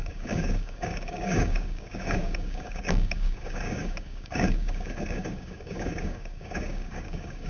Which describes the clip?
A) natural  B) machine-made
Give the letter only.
B